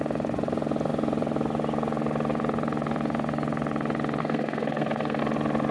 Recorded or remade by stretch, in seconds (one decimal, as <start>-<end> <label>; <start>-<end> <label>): 0.0-4.2 recorded; 4.2-5.2 remade; 5.2-5.7 recorded